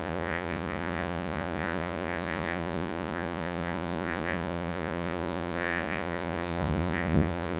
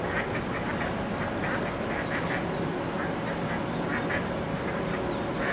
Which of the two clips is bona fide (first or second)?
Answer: second